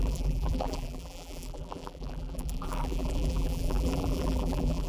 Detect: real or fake fake